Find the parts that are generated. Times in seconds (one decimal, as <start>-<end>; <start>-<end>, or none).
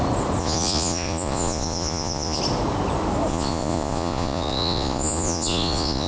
0.4-2.4; 3.3-6.1